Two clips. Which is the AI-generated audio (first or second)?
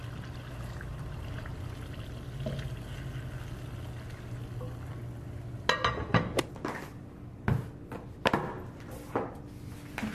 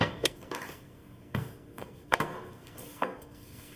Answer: second